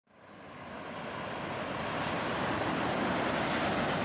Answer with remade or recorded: recorded